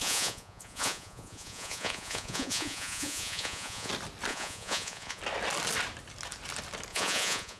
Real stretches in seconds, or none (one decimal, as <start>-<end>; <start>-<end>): 3.9-4.3; 5.2-6.9